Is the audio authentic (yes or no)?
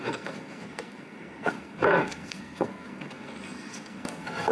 no